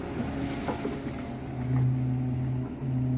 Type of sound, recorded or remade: recorded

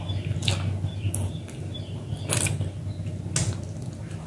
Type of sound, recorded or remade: recorded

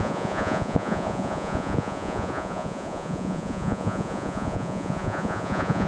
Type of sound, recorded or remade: remade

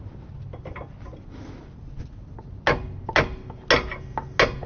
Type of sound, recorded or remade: recorded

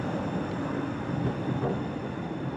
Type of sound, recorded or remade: recorded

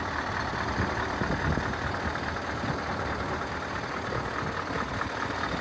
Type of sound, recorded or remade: recorded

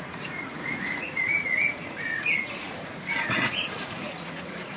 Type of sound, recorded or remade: remade